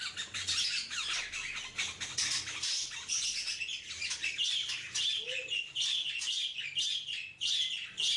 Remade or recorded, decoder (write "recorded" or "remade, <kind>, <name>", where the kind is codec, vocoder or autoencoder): recorded